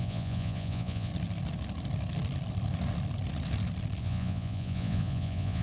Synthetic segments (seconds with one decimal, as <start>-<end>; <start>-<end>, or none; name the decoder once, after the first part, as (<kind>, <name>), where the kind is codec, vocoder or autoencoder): 0.0-1.1 (vocoder, Vocos); 4.0-5.6